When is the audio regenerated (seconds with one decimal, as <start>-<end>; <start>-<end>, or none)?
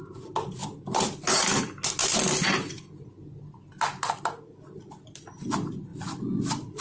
none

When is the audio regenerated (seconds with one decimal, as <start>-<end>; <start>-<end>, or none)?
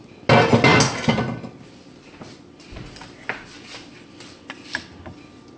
none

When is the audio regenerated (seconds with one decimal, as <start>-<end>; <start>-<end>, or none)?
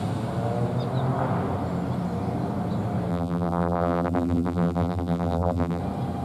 3.1-5.8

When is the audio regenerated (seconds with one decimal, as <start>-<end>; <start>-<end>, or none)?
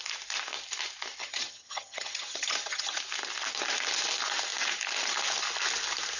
1.2-3.0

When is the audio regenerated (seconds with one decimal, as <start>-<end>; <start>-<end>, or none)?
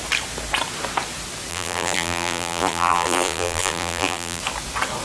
1.5-4.4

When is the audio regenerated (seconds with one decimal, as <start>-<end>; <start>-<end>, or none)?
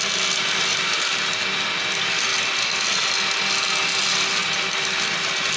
none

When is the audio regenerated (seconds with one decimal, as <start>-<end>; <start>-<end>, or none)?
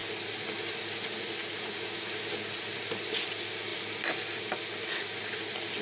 none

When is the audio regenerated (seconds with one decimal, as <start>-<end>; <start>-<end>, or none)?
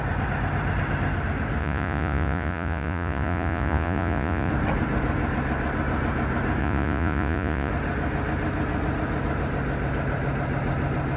1.6-4.5; 6.6-7.7